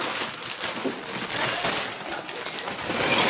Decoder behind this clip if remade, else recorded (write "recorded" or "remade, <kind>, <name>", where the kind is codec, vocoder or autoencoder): recorded